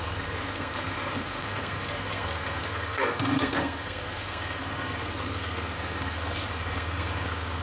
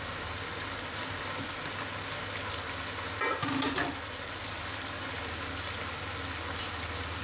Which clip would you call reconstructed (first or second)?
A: first